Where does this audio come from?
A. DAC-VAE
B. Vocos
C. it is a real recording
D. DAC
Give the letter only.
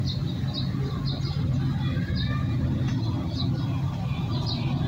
C